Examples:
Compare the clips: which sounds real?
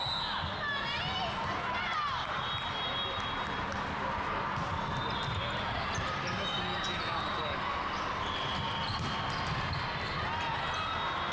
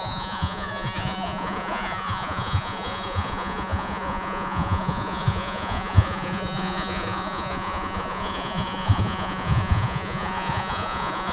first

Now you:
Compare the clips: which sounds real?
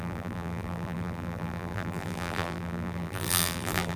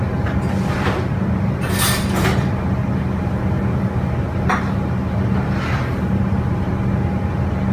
second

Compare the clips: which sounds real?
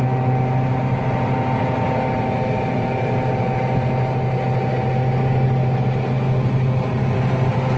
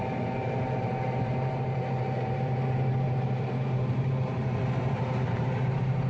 first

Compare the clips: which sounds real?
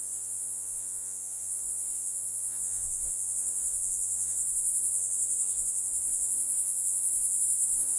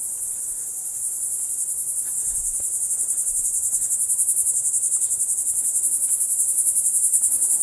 second